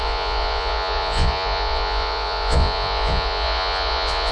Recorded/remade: remade